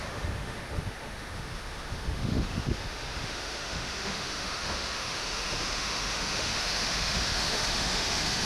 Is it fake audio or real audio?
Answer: fake